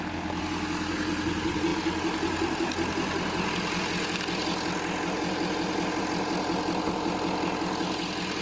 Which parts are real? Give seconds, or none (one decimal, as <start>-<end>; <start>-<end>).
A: 0.0-8.4